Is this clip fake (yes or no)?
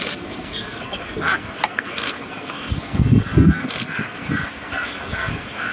yes